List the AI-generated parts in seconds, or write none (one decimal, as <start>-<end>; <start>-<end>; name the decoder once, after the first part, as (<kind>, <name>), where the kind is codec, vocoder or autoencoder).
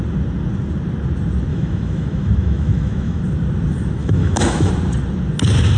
1.5-3.2 (autoencoder, DAC-VAE); 4.0-4.7